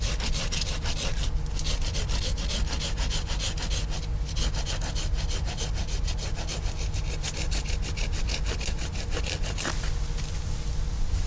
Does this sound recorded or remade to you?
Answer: recorded